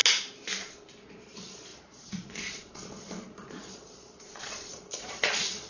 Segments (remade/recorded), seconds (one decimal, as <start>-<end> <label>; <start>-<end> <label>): 0.0-1.1 recorded; 1.1-5.7 remade